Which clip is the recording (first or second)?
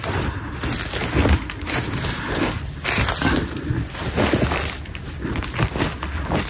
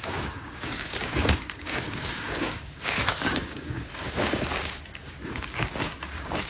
first